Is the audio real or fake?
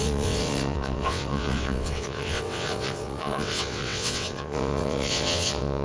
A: fake